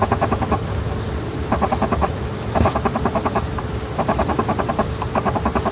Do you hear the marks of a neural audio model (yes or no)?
yes